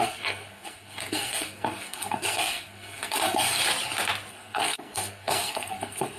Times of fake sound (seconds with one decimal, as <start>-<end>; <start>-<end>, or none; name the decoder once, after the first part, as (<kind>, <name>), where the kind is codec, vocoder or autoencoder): 0.0-3.6 (codec, SNAC); 4.3-6.2